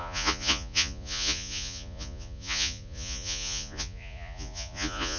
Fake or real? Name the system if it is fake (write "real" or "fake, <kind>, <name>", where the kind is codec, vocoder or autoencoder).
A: fake, vocoder, Vocos